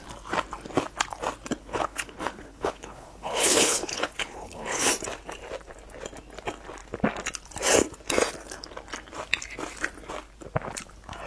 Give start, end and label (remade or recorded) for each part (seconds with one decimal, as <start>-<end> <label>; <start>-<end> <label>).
0.0-1.6 recorded; 1.6-4.9 remade; 4.9-11.3 recorded